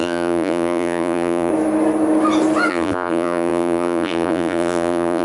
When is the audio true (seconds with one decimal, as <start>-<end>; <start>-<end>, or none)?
1.5-2.7

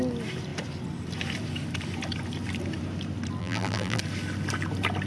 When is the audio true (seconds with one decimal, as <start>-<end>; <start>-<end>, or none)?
0.0-3.4; 4.0-5.1

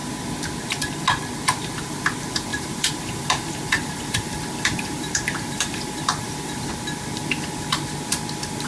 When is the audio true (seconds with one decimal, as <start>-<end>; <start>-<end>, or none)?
0.0-2.5; 6.7-8.7